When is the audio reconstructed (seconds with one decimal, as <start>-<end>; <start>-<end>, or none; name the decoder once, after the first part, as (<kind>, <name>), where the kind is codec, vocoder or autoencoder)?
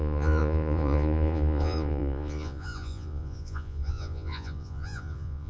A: 0.0-5.5 (vocoder, Vocos)